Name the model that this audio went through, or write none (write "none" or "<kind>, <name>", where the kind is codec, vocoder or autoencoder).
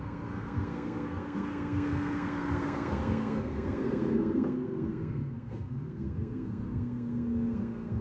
codec, SNAC